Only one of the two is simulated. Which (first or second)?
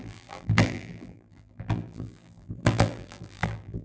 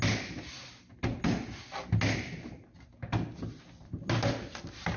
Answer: first